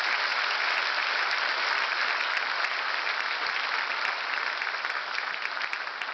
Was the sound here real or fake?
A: real